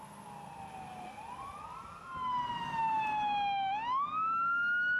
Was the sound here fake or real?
real